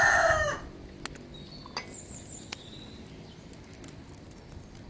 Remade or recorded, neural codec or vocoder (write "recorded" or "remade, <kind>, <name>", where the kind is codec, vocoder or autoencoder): recorded